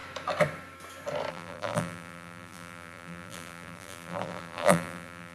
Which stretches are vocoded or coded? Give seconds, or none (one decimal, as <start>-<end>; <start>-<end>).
1.3-5.3